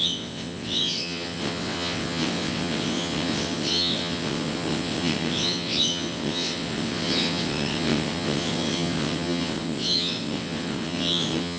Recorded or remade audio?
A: remade